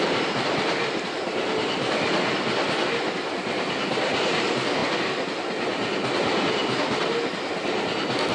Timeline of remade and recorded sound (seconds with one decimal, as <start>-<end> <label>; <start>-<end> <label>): 0.0-8.3 recorded